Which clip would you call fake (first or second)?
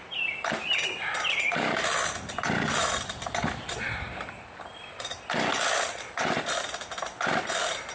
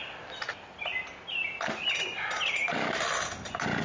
first